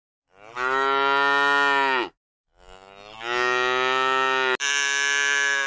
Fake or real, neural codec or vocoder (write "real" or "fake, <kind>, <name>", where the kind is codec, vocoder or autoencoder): real